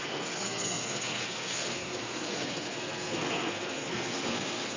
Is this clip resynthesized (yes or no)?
yes